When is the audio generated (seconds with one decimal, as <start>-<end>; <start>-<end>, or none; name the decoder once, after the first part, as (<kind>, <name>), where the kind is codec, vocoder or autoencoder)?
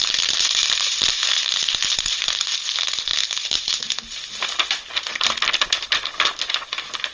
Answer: none